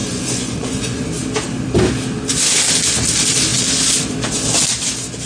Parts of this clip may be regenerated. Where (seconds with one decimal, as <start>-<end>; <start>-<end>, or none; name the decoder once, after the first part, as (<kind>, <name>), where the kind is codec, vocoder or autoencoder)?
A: 0.0-1.0 (vocoder, Vocos)